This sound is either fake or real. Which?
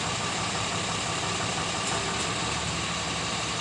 real